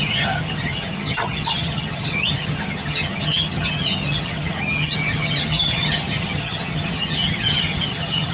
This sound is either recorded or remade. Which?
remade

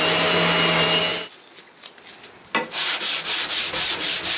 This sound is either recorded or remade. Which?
recorded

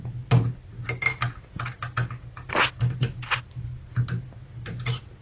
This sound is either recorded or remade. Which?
recorded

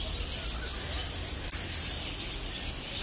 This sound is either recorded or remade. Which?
recorded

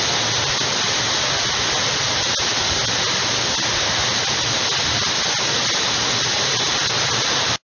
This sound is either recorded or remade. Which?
recorded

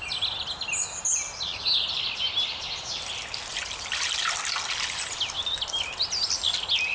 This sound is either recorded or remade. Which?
recorded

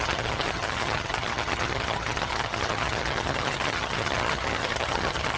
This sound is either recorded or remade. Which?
remade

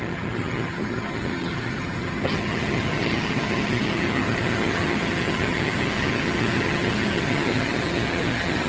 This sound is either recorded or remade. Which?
remade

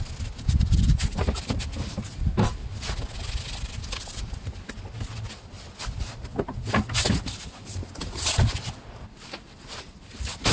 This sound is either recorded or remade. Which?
recorded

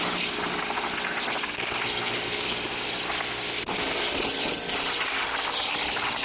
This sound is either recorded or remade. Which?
recorded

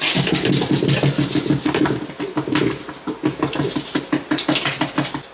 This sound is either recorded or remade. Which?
recorded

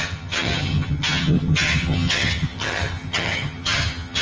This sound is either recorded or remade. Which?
remade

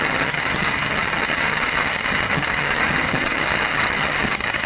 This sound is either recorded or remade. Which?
remade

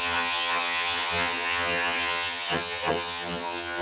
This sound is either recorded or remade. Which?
remade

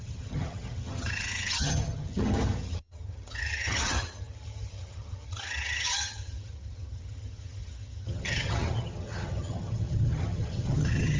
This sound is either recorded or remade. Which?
remade